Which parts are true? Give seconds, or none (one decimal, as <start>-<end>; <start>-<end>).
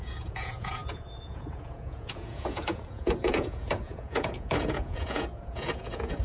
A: none